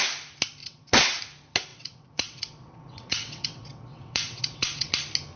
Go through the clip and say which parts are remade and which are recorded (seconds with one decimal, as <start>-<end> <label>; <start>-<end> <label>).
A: 0.0-0.6 recorded; 0.6-1.2 remade; 1.2-1.7 recorded; 1.7-4.9 remade; 4.9-5.4 recorded